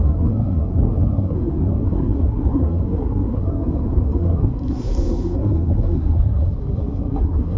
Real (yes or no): no